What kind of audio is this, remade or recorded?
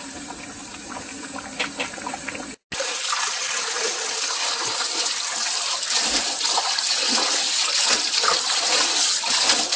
recorded